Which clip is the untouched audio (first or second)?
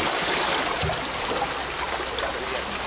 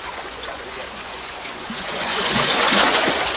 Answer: first